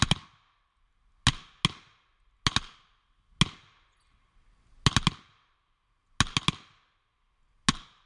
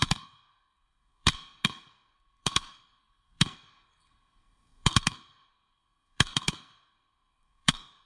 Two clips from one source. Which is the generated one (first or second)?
second